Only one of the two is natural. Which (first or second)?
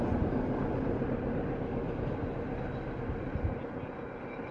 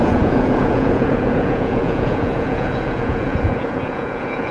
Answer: first